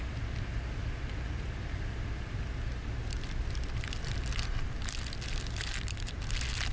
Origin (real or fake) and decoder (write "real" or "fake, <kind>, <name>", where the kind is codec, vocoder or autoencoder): real